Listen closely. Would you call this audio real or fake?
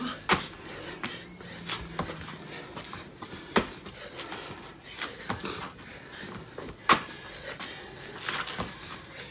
real